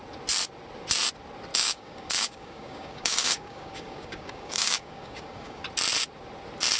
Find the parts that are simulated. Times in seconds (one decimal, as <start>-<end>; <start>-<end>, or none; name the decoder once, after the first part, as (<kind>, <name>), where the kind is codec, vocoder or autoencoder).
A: 1.5-5.6 (codec, DAC)